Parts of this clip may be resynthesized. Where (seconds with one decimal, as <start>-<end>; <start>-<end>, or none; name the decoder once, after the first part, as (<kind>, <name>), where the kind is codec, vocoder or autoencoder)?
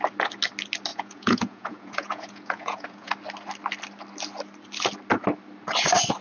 0.9-3.1 (vocoder, Vocos)